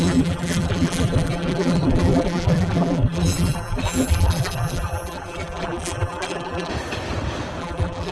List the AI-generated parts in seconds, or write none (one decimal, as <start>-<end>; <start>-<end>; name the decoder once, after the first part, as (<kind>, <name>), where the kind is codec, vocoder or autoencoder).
0.0-6.7 (vocoder, BigVGAN v2); 7.6-8.1

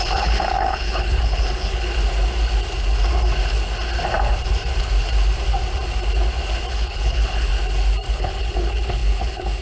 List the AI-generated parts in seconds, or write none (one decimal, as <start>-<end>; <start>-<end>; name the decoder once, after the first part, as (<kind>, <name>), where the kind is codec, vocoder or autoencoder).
0.0-1.9 (codec, HILCodec); 6.7-7.5; 8.1-9.6

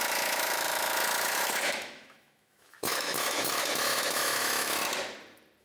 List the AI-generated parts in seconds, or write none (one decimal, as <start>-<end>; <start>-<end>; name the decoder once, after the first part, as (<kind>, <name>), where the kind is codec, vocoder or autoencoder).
0.0-4.8 (autoencoder, DAC-VAE)

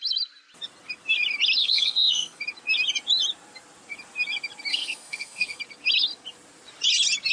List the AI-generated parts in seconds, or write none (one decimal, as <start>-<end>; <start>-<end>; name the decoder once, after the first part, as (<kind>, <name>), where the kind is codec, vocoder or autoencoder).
1.6-2.4 (codec, SNAC); 4.7-5.6

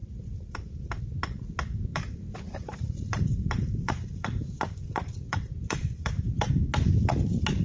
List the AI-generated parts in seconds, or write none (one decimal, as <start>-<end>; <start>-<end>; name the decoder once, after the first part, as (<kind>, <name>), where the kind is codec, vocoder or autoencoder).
0.0-1.0 (vocoder, BigVGAN v2); 1.9-6.5

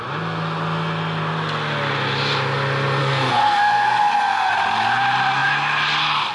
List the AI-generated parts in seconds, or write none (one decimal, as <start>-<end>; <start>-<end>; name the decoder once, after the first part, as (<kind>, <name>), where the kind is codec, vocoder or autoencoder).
3.0-4.5 (codec, SNAC)

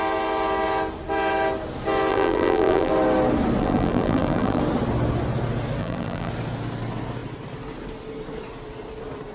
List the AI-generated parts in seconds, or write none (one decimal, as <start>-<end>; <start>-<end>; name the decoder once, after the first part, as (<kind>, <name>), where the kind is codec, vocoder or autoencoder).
2.1-2.9 (vocoder, BigVGAN v2); 3.6-4.6; 5.8-6.3

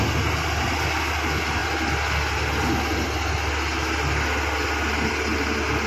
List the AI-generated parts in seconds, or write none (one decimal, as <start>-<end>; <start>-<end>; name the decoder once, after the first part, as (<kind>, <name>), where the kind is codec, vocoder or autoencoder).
none